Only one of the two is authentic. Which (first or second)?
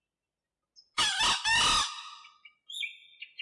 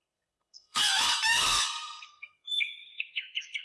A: first